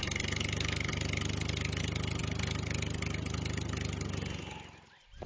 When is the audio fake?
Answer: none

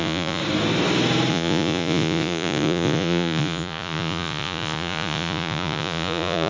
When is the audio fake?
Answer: 0.0-0.4 (vocoder, Vocos); 1.3-6.5

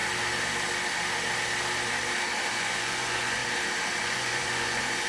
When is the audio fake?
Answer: 2.5-3.4 (vocoder, Vocos); 4.0-5.1